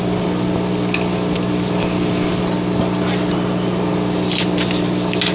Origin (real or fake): real